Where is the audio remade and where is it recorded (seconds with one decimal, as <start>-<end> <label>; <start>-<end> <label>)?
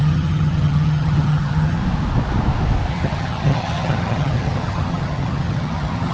0.0-1.8 remade; 1.8-2.9 recorded; 2.9-6.1 remade